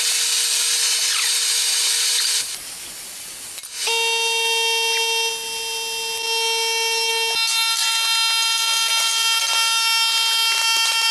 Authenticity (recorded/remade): recorded